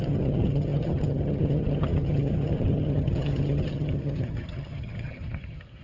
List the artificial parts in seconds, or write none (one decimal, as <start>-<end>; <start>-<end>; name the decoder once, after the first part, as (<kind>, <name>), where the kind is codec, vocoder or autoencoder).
0.0-5.8 (vocoder, HiFi-GAN)